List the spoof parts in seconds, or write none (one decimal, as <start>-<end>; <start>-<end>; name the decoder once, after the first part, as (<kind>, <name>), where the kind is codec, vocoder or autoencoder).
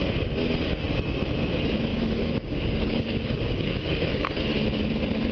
1.9-4.4 (codec, DAC)